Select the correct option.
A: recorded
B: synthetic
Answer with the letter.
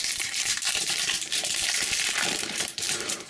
B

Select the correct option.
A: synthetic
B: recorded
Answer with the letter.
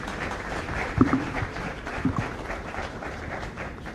A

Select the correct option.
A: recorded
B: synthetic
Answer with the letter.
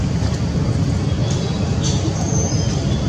A